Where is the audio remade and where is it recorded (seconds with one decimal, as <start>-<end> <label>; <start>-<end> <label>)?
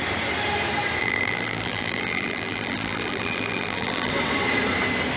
0.0-1.0 recorded; 1.0-4.1 remade; 4.1-5.2 recorded